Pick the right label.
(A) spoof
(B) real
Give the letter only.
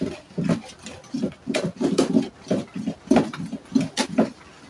B